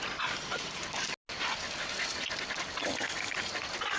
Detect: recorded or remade recorded